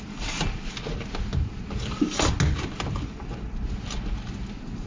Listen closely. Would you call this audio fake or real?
real